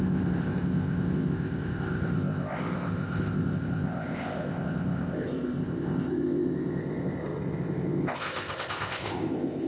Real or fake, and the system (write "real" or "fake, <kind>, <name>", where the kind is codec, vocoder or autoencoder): fake, codec, ZipCodec